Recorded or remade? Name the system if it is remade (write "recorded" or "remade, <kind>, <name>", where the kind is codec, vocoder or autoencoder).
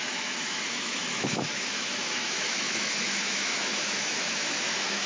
remade, autoencoder, DAC-VAE